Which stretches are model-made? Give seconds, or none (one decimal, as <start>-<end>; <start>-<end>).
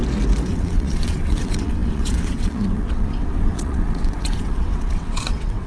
0.5-5.7